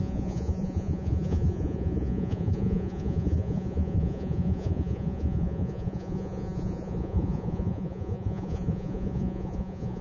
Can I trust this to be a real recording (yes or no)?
no